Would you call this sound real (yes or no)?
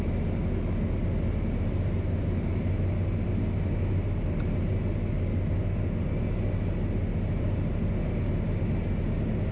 yes